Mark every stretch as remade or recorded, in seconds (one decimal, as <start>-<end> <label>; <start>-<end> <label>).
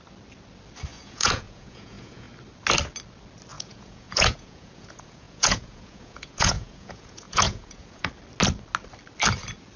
0.0-0.9 recorded; 0.9-2.3 remade; 2.3-3.5 recorded; 3.5-8.1 remade; 8.1-9.8 recorded